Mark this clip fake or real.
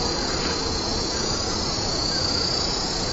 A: fake